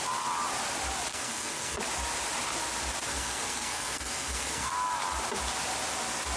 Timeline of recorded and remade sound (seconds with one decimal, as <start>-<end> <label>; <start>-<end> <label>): 0.0-1.1 recorded; 1.1-1.8 remade; 1.8-3.1 recorded; 3.1-4.7 remade; 4.7-6.4 recorded